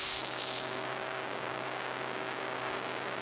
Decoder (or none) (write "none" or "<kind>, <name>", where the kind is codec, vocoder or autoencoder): codec, DAC